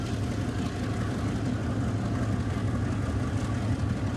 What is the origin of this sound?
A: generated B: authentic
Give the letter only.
B